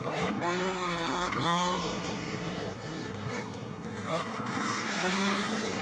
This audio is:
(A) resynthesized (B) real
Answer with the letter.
A